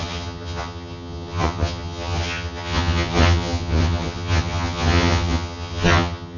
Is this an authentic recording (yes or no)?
no